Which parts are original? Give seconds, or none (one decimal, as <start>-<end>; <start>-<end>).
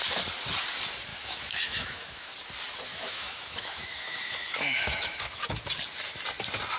0.0-1.1; 2.3-2.9; 5.6-6.8